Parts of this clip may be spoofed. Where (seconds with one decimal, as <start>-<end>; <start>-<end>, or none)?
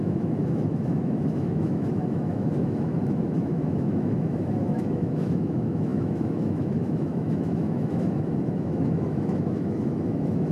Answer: 0.0-10.5